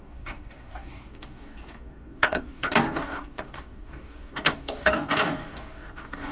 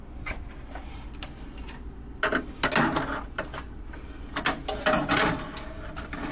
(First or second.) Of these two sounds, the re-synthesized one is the first